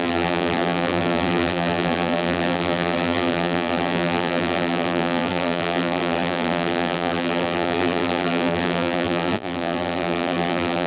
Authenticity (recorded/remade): remade